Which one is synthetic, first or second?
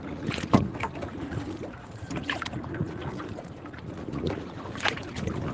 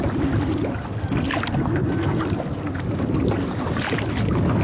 first